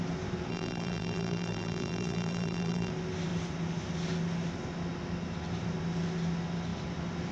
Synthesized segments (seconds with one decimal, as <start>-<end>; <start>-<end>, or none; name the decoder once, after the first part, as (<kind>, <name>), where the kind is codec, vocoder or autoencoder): 0.5-2.9 (vocoder, BigVGAN v2)